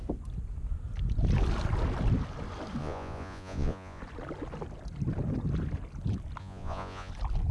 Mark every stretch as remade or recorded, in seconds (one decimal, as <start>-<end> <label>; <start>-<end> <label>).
0.0-2.8 recorded; 2.8-4.0 remade; 4.0-6.4 recorded; 6.4-7.1 remade; 7.1-7.5 recorded